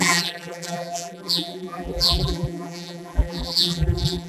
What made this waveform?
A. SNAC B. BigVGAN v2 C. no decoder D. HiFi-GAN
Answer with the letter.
B